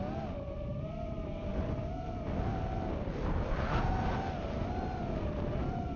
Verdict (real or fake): real